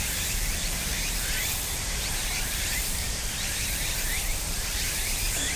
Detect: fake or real fake